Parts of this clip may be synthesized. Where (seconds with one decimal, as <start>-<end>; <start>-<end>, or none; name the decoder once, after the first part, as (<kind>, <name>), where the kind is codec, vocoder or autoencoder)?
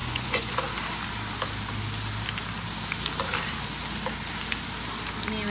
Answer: 0.0-0.6 (vocoder, Vocos)